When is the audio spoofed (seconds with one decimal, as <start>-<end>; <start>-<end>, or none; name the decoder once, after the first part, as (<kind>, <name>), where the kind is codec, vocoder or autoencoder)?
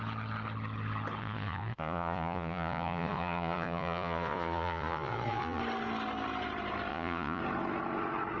1.2-5.6 (vocoder, Vocos); 6.9-7.4